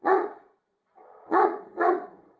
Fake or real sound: fake